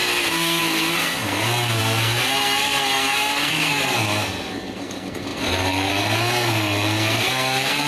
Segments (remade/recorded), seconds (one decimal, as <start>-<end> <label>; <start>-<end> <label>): 0.0-7.9 remade